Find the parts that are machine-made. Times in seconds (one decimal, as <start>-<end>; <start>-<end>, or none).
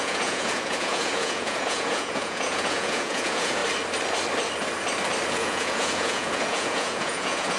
0.0-3.6; 5.3-7.6